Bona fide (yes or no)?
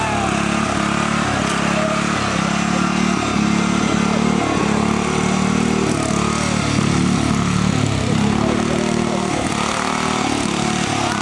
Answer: yes